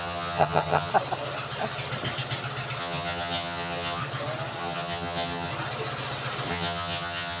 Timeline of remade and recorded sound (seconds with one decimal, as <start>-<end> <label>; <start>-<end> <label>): 0.0-0.9 remade; 0.9-2.8 recorded; 2.8-4.0 remade; 4.0-4.6 recorded; 4.6-5.5 remade; 5.5-6.5 recorded; 6.5-7.4 remade